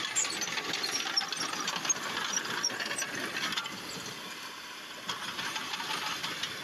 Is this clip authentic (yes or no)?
yes